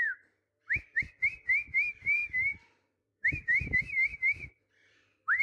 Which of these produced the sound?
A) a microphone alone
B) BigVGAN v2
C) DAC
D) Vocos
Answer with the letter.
B